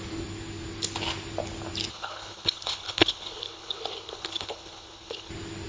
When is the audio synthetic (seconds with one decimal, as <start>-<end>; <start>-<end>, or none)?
1.9-5.3